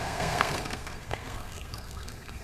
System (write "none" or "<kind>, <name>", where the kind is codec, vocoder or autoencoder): codec, SNAC